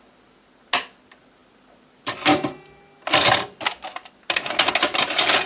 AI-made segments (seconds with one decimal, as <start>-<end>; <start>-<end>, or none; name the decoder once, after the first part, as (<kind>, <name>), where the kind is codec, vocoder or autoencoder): none

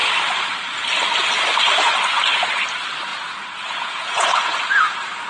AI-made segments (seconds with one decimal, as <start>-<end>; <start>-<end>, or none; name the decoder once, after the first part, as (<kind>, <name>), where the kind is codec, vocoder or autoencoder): 3.1-5.3 (vocoder, Vocos)